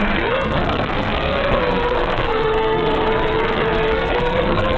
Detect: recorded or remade remade